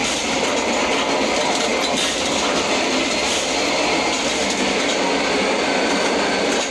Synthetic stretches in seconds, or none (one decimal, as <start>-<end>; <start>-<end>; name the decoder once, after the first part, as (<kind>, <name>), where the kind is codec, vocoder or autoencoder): none